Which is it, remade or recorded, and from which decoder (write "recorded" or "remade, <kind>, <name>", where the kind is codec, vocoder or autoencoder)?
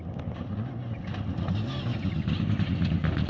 recorded